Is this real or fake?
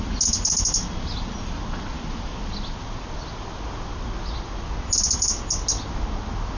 real